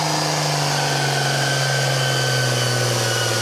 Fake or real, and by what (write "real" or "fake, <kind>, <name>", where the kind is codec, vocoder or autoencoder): real